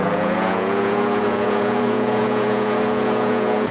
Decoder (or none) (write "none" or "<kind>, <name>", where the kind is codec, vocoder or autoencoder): vocoder, Vocos